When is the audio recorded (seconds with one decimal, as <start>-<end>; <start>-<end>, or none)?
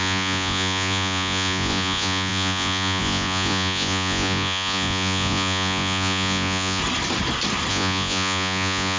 6.8-7.7